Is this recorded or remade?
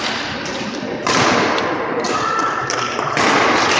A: recorded